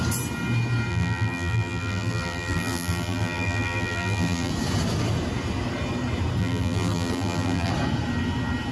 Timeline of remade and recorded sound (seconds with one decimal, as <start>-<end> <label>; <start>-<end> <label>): 0.0-0.9 recorded; 0.9-4.5 remade; 4.5-6.4 recorded; 6.4-7.7 remade; 7.7-8.7 recorded